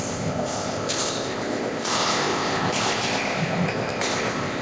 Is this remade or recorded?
remade